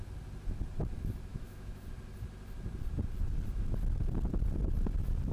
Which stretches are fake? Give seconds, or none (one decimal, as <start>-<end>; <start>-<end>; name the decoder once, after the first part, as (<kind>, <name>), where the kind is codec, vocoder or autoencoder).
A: 1.3-1.8 (autoencoder, DAC-VAE)